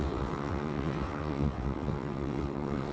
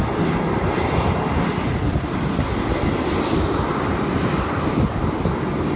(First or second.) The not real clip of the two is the first